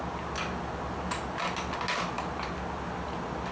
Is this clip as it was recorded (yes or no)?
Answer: yes